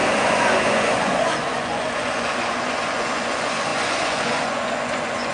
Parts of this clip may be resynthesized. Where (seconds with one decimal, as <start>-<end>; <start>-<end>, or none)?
0.0-5.3